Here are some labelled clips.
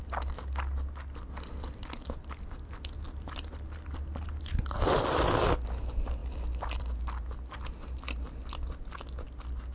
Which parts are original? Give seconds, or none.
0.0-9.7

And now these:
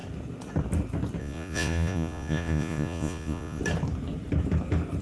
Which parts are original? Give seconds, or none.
0.0-1.2; 3.6-5.0